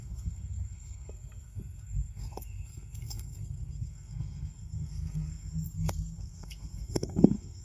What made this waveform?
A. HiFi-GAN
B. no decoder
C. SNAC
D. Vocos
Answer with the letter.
C